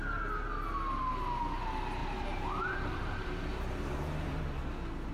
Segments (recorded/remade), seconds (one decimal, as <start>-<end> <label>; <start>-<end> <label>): 0.0-2.0 recorded; 2.0-4.4 remade; 4.4-5.1 recorded